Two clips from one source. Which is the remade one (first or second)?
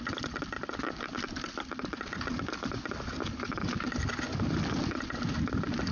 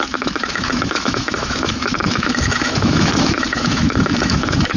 second